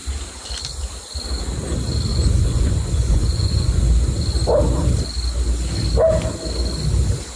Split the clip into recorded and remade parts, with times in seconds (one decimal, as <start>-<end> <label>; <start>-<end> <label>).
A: 0.0-2.1 recorded; 2.1-3.8 remade; 3.8-7.4 recorded